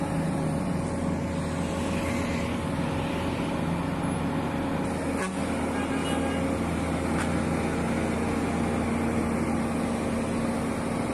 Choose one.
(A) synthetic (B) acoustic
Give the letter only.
B